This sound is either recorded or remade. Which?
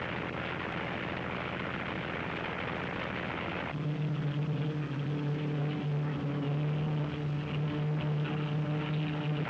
recorded